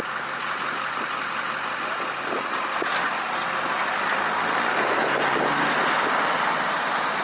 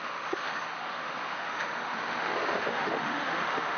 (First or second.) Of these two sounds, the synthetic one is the second